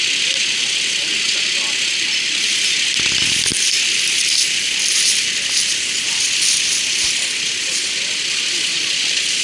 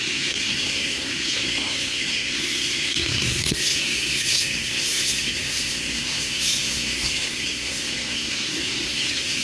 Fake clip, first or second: second